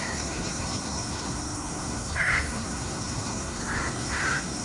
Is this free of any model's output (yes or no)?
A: no